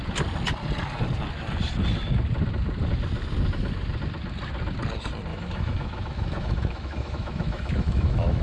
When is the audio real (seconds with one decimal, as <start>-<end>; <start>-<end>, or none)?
0.0-5.3